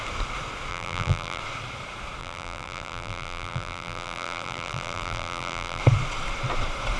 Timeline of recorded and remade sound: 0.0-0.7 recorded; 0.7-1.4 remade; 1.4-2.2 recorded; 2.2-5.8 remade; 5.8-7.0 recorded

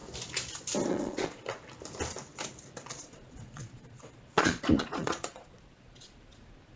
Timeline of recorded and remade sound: 0.0-0.9 recorded; 0.9-1.4 remade; 1.4-3.0 recorded; 3.0-6.8 remade

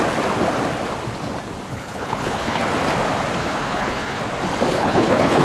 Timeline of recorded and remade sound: 0.0-1.7 recorded; 1.7-2.6 remade; 2.6-3.4 recorded; 3.4-4.2 remade; 4.2-4.7 recorded; 4.7-5.4 remade

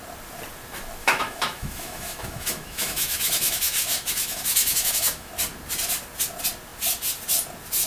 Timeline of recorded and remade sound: 0.0-1.0 recorded; 1.0-5.3 remade; 5.3-7.9 recorded

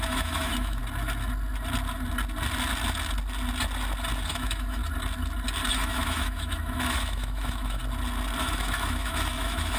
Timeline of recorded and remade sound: 0.0-0.8 remade; 0.8-4.3 recorded; 4.3-4.8 remade; 4.8-5.7 recorded; 5.7-7.8 remade; 7.8-8.4 recorded; 8.4-9.8 remade

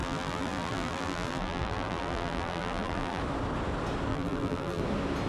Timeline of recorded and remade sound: 0.0-3.2 remade; 3.2-4.1 recorded; 4.1-4.8 remade; 4.8-5.3 recorded

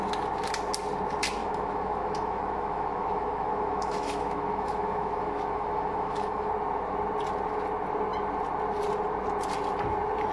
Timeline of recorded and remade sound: 0.0-1.4 recorded; 1.4-6.5 remade; 6.5-10.3 recorded

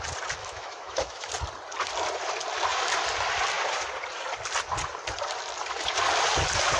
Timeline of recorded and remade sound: 0.0-0.4 recorded; 0.4-1.3 remade; 1.3-6.8 recorded